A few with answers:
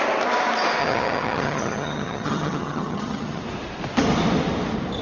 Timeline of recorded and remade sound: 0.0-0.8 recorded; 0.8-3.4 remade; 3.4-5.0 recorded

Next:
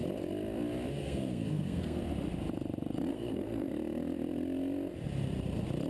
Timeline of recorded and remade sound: 0.0-1.0 recorded; 1.0-2.0 remade; 2.0-3.1 recorded; 3.1-3.7 remade; 3.7-5.9 recorded

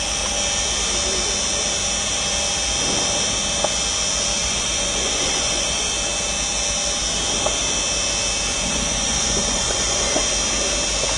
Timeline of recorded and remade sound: 0.0-4.4 recorded; 4.4-5.9 remade; 5.9-8.5 recorded; 8.5-10.2 remade; 10.2-11.2 recorded

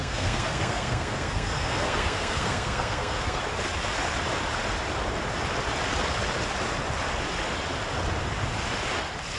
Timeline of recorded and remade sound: 0.0-3.4 remade; 3.4-9.4 recorded

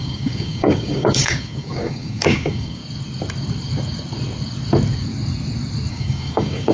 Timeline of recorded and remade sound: 0.0-2.8 remade; 2.8-5.9 recorded; 5.9-6.7 remade

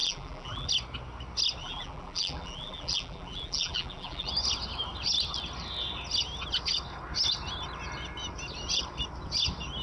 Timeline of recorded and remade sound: 0.0-0.7 remade; 0.7-1.6 recorded; 1.6-4.3 remade; 4.3-9.8 recorded

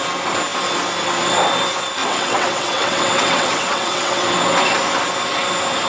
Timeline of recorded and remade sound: 0.0-2.0 recorded; 2.0-4.3 remade; 4.3-5.9 recorded